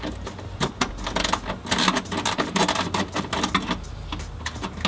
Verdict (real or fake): real